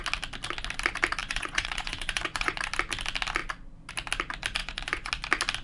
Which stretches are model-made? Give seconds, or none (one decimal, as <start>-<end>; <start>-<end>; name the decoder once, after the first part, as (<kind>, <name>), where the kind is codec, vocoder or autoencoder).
1.2-2.6 (vocoder, Vocos); 4.6-5.1